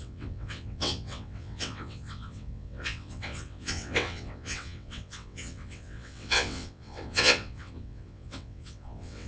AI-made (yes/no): yes